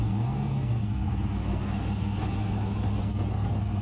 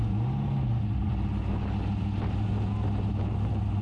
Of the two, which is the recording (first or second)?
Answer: second